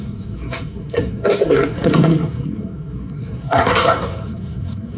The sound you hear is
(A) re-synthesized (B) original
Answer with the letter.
A